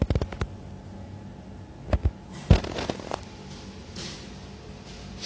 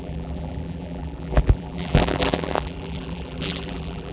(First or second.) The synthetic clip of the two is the second